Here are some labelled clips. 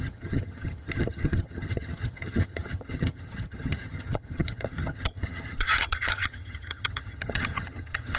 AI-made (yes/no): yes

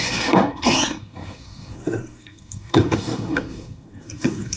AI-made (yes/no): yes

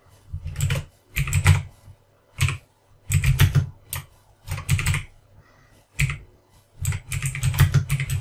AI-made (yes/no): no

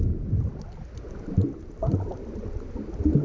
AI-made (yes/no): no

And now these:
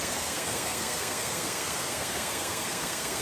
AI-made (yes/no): yes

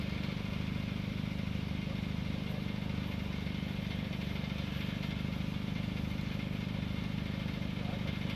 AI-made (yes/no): no